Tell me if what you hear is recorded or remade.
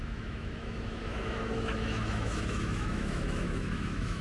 remade